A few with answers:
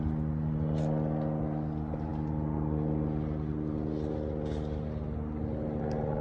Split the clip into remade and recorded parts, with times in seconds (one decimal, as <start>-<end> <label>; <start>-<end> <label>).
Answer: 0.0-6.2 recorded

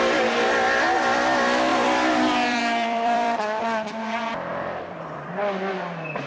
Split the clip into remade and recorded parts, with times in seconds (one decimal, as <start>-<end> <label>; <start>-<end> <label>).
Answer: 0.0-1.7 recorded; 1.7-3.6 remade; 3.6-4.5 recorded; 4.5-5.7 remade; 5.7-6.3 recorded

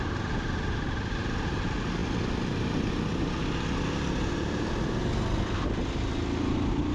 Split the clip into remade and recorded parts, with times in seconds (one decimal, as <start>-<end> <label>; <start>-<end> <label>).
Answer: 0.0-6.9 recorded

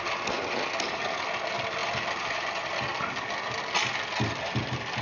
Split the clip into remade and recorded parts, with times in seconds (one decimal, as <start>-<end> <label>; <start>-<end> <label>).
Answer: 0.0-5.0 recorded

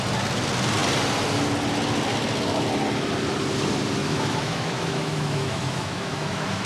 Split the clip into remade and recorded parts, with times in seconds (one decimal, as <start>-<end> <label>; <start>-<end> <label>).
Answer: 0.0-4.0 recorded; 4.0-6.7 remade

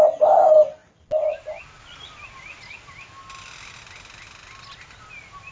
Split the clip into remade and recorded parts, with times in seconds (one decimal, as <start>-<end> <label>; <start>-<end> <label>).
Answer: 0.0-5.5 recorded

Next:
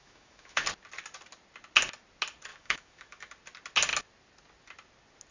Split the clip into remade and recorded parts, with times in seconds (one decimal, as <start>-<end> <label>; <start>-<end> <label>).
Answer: 0.0-0.7 remade; 0.7-2.5 recorded; 2.5-3.3 remade; 3.3-5.3 recorded

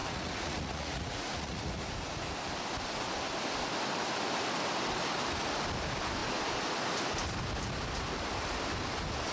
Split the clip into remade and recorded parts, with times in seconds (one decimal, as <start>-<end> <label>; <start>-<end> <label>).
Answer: 0.0-1.8 remade; 1.8-9.3 recorded